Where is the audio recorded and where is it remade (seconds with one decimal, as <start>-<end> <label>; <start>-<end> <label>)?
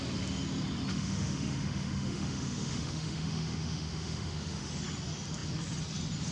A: 0.0-0.9 recorded; 0.9-4.7 remade; 4.7-6.3 recorded